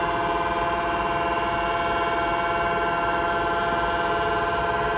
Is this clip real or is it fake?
real